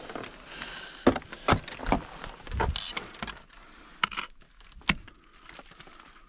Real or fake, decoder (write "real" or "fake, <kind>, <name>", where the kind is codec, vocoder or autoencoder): real